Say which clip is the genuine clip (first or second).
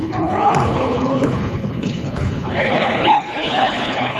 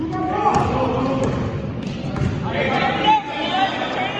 second